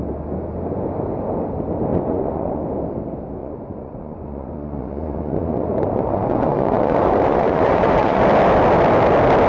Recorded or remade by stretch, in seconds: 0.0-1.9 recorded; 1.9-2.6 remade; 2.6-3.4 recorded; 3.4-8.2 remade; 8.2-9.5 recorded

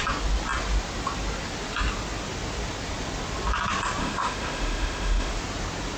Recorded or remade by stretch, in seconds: 0.0-4.0 recorded; 4.0-5.3 remade; 5.3-6.0 recorded